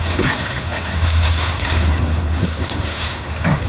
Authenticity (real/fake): fake